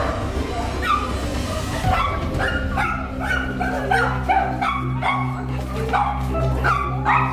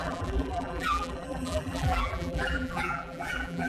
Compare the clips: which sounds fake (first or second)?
second